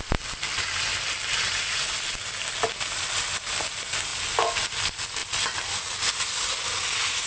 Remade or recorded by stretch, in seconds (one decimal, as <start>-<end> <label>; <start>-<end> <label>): 0.0-7.3 recorded